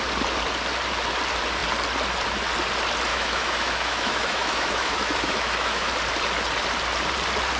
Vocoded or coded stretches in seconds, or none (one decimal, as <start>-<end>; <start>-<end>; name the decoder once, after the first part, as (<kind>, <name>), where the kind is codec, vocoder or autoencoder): 3.1-5.9 (autoencoder, DAC-VAE)